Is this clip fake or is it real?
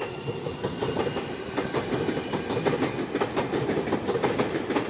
real